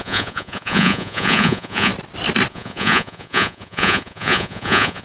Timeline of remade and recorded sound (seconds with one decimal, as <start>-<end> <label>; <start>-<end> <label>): 0.0-1.9 remade; 1.9-2.5 recorded; 2.5-5.0 remade